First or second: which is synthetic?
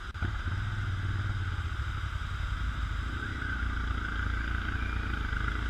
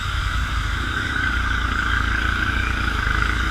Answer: second